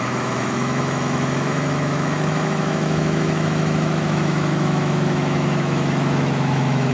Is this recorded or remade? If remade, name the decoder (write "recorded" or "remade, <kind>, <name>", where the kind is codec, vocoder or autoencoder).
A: remade, autoencoder, DAC-VAE